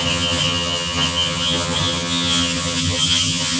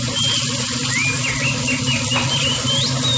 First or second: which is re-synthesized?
first